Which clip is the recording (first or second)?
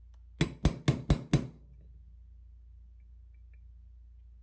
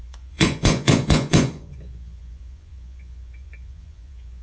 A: first